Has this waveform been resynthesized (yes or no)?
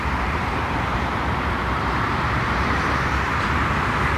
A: yes